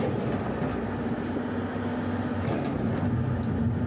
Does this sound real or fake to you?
real